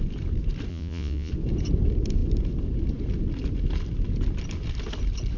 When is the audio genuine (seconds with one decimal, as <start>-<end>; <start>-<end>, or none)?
0.0-0.7; 1.3-5.4